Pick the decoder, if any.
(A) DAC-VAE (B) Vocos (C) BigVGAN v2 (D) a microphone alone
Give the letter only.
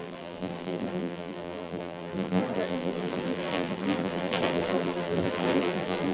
C